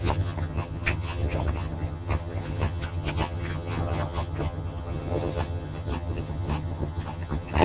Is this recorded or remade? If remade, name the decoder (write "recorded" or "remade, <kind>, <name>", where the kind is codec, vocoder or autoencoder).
remade, vocoder, HiFi-GAN